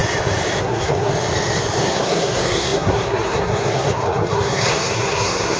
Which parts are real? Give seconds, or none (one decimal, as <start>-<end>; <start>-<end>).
0.0-0.6; 1.1-1.8